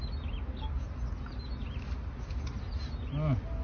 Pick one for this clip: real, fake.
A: real